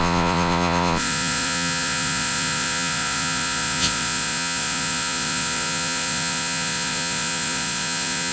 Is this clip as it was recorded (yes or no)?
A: no